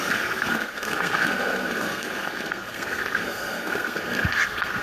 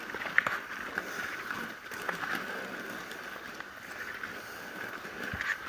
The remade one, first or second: first